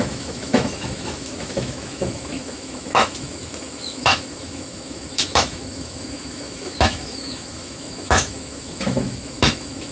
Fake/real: fake